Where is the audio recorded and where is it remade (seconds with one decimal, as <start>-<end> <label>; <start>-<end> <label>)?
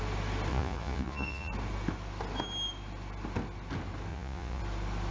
0.0-0.5 recorded; 0.5-1.5 remade; 1.5-4.1 recorded; 4.1-4.6 remade; 4.6-5.1 recorded